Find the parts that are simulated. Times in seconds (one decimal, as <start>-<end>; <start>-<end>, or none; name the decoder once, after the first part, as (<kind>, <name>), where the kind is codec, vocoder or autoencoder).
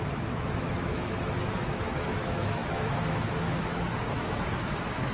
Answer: 0.0-5.1 (autoencoder, DAC-VAE)